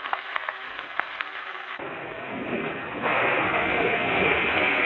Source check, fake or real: fake